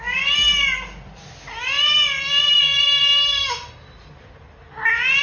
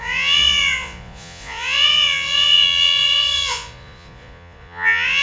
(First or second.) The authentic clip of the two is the first